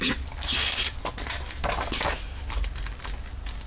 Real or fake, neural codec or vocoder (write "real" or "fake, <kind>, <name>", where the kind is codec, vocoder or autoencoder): real